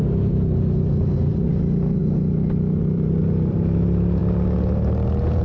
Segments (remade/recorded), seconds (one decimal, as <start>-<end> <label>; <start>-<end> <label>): 0.0-2.0 remade; 2.0-2.8 recorded; 2.8-4.2 remade; 4.2-5.4 recorded